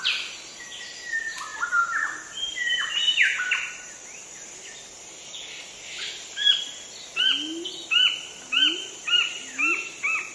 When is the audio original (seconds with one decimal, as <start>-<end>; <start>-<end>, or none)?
0.0-10.3